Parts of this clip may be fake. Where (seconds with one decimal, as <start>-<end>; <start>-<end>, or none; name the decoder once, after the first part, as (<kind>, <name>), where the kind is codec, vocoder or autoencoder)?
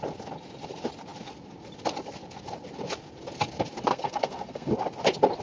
3.9-4.7 (codec, SNAC)